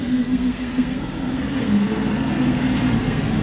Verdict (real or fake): fake